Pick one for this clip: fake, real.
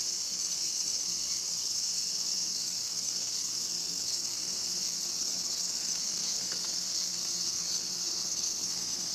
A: fake